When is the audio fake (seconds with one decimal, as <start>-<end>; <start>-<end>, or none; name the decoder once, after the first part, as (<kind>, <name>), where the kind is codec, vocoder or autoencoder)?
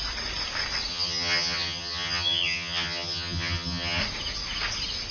0.9-4.0 (vocoder, HiFi-GAN)